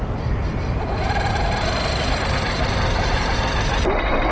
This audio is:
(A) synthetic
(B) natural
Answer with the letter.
B